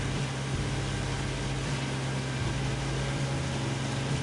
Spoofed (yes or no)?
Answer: no